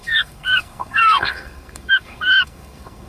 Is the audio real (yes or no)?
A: no